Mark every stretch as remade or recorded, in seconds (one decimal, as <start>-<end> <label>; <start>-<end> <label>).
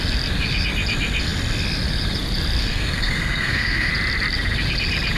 0.0-2.6 recorded; 2.6-3.9 remade; 3.9-5.2 recorded